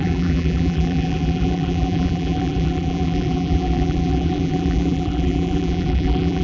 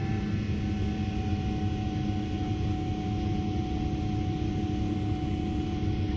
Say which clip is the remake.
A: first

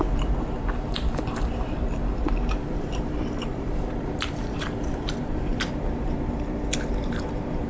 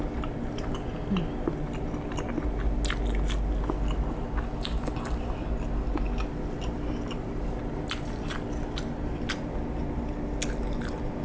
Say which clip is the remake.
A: first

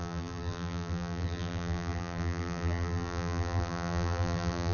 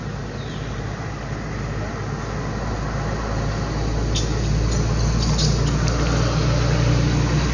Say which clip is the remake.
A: first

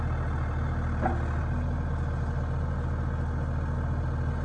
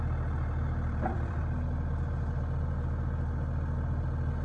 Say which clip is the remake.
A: second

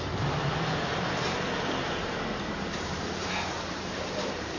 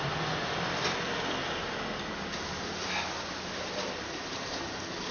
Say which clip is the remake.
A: first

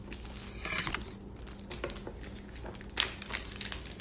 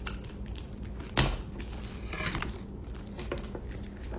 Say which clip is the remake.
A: second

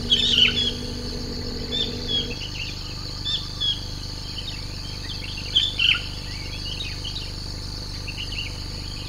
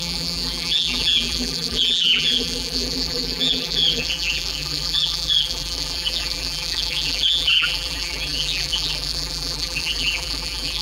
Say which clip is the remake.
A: second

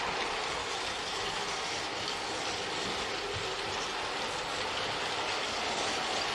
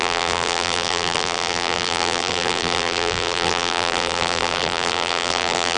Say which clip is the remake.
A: second